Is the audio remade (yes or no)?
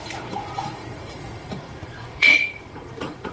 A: yes